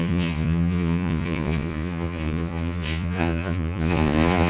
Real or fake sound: fake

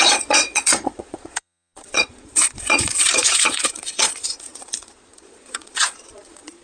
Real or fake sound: fake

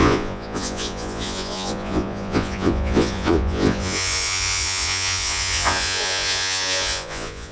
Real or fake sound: fake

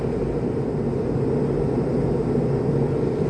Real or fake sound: real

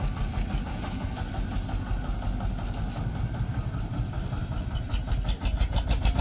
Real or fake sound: real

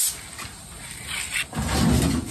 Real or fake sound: real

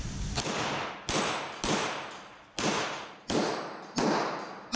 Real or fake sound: real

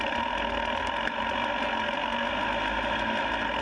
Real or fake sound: real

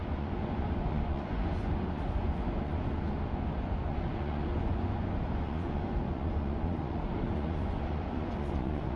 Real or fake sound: fake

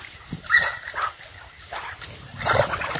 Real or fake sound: real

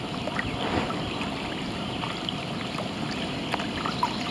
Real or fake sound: real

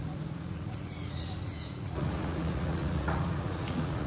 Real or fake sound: fake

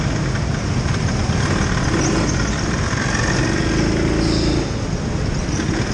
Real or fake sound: real